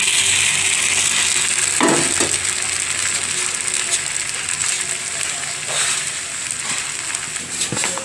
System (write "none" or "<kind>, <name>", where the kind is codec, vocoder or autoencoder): none